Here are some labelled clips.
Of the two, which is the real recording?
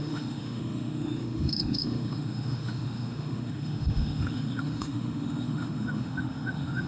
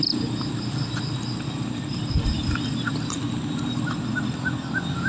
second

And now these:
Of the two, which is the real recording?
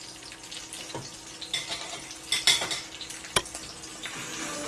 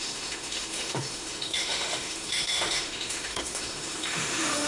first